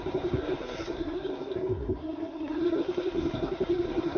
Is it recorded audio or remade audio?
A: remade